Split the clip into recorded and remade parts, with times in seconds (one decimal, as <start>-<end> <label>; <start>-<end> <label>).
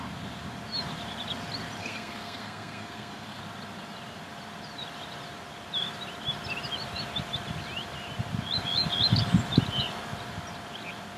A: 0.0-1.8 recorded; 1.8-3.4 remade; 3.4-11.2 recorded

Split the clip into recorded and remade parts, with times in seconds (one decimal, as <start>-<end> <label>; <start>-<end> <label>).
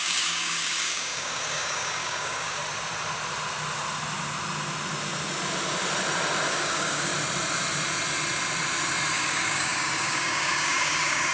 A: 0.0-2.6 remade; 2.6-6.5 recorded; 6.5-7.1 remade; 7.1-9.1 recorded; 9.1-11.3 remade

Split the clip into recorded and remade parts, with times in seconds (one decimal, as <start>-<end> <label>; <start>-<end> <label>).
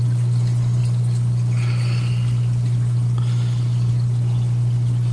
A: 0.0-5.1 recorded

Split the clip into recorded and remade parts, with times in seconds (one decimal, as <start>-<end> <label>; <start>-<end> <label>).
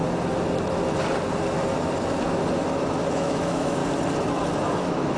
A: 0.0-3.1 recorded; 3.1-3.8 remade; 3.8-4.8 recorded; 4.8-5.2 remade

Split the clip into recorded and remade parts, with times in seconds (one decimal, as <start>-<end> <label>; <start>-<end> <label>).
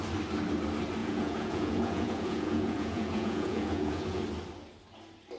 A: 0.0-1.0 recorded; 1.0-4.2 remade; 4.2-5.4 recorded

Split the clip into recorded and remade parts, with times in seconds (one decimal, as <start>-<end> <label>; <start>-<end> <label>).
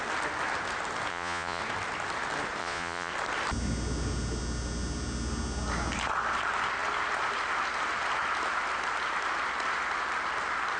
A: 0.0-1.1 recorded; 1.1-1.6 remade; 1.6-2.6 recorded; 2.6-3.1 remade; 3.1-10.8 recorded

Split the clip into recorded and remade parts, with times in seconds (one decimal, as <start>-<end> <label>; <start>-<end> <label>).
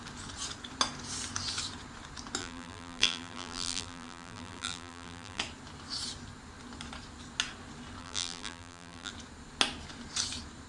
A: 0.0-2.4 recorded; 2.4-5.4 remade; 5.4-8.0 recorded; 8.0-9.1 remade; 9.1-10.7 recorded